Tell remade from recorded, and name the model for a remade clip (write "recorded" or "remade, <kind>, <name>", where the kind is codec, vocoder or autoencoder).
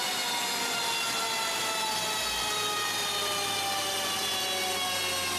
recorded